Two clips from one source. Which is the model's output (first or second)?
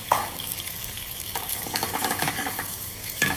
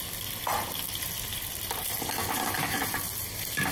first